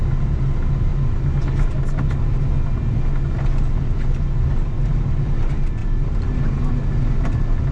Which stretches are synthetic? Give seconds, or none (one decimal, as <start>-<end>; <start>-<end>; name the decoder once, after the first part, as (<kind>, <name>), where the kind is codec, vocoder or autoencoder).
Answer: 5.8-6.3 (vocoder, BigVGAN v2)